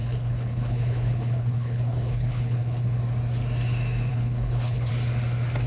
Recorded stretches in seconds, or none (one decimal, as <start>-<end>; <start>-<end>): 3.0-4.1; 4.9-5.7